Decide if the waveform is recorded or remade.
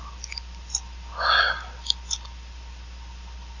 recorded